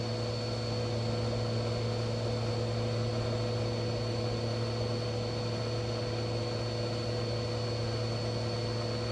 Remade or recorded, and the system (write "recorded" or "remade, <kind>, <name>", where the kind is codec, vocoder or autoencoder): recorded